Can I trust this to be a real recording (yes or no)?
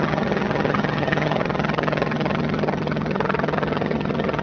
no